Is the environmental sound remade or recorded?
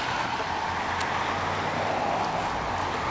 recorded